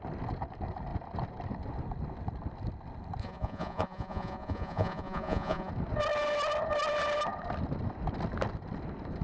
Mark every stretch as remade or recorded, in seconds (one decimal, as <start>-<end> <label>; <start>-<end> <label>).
0.0-3.2 recorded; 3.2-5.7 remade; 5.7-9.2 recorded